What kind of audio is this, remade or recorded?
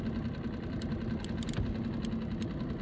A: recorded